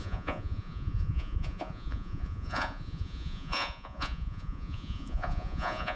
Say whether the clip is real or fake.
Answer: fake